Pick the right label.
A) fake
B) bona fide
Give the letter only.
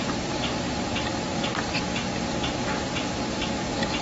B